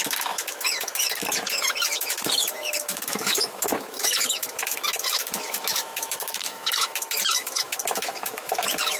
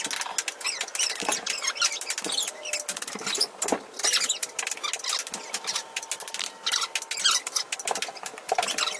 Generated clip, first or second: first